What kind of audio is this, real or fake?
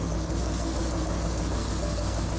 fake